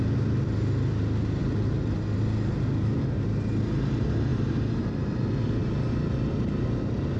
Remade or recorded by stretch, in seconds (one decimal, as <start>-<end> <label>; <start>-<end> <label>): 0.0-4.3 recorded; 4.3-4.8 remade; 4.8-7.2 recorded